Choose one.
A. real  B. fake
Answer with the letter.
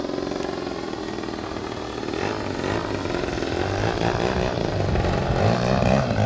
A